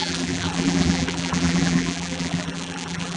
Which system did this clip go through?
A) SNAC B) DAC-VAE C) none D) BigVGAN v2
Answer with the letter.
D